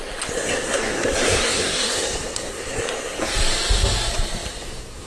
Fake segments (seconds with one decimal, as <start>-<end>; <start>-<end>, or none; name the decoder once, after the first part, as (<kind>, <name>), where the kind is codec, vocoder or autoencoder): 0.5-2.8 (codec, SNAC); 4.5-5.1